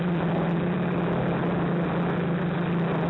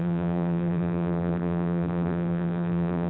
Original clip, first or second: first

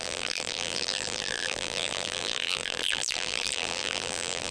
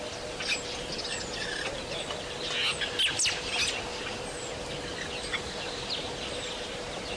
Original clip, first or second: second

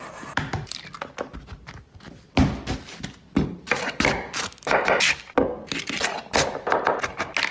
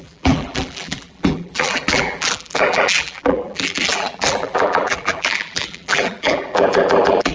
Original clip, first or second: first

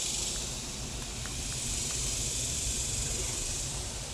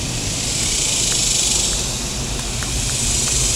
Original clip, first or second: second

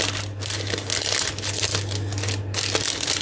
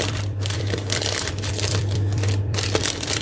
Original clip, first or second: first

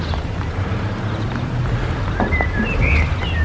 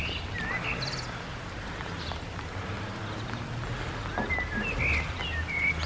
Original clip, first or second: second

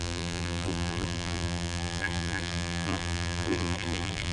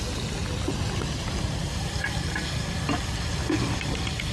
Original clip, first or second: second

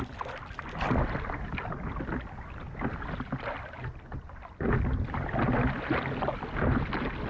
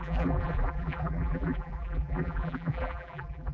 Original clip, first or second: first